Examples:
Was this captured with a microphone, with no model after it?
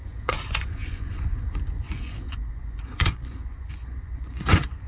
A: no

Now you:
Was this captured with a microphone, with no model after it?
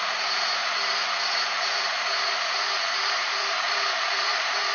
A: no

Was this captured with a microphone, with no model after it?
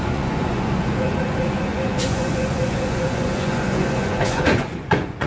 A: no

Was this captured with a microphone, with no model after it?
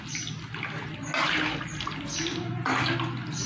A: yes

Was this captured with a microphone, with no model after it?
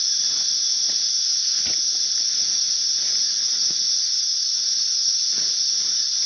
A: yes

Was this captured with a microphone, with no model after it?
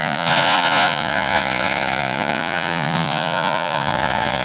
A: no